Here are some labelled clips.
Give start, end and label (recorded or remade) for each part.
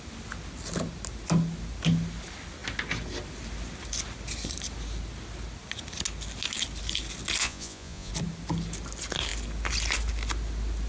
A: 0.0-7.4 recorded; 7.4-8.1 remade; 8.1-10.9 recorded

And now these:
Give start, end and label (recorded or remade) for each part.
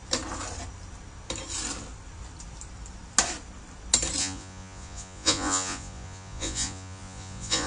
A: 0.0-4.2 recorded; 4.2-7.7 remade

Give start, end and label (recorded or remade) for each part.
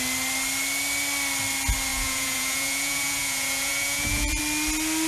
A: 0.0-1.9 recorded; 1.9-4.4 remade; 4.4-5.1 recorded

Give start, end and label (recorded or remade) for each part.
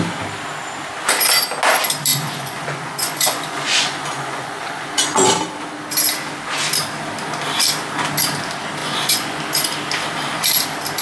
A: 0.0-2.1 recorded; 2.1-5.3 remade; 5.3-8.8 recorded; 8.8-9.4 remade; 9.4-11.0 recorded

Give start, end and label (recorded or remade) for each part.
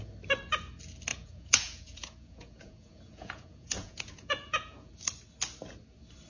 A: 0.0-1.1 recorded; 1.1-4.9 remade; 4.9-6.3 recorded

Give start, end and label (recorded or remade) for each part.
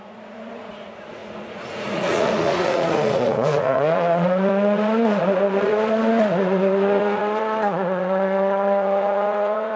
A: 0.0-9.8 remade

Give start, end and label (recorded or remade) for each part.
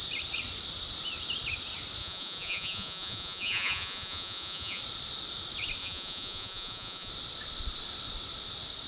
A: 0.0-2.0 recorded; 2.0-4.8 remade; 4.8-5.8 recorded; 5.8-7.1 remade; 7.1-8.9 recorded